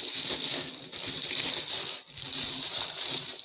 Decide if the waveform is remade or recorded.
recorded